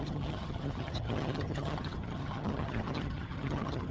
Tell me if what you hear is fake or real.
fake